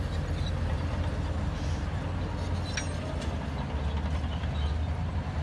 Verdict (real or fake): real